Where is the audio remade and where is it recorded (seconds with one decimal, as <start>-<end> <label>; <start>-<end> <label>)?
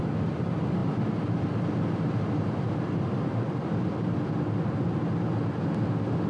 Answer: 0.0-6.3 recorded